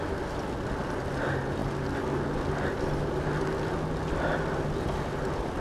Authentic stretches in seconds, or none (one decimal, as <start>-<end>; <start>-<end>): 0.0-5.6